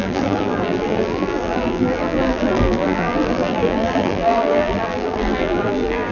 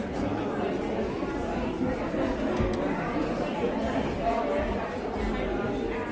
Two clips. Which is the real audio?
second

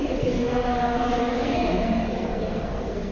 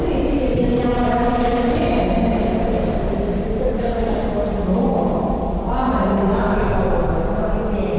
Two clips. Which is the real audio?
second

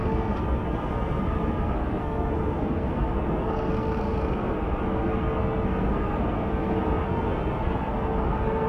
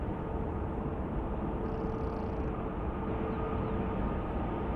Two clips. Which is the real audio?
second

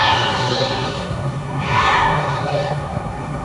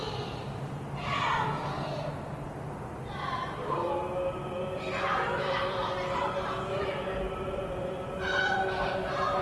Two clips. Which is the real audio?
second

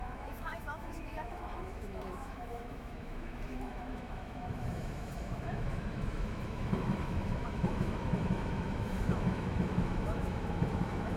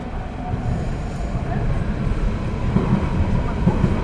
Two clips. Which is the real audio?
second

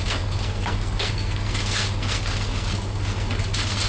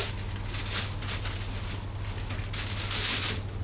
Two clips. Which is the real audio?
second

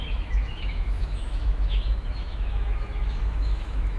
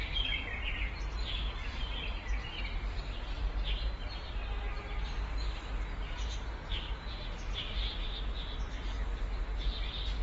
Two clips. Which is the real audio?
second